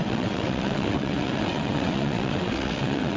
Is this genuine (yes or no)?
no